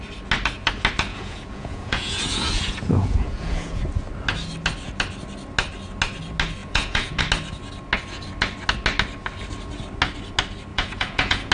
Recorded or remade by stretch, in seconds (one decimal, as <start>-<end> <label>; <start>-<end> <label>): 0.0-1.1 recorded; 1.1-3.8 remade; 3.8-6.6 recorded; 6.6-7.2 remade; 7.2-10.7 recorded; 10.7-11.5 remade